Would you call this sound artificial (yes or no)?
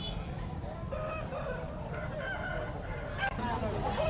no